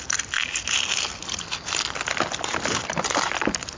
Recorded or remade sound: recorded